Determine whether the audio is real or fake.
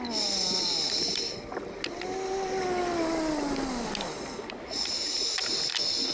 real